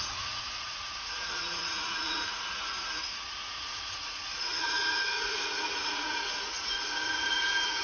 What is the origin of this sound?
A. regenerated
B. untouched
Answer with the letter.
A